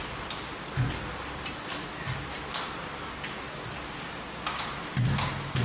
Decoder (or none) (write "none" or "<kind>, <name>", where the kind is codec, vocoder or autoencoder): none